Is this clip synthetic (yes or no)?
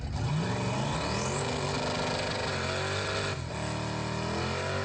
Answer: no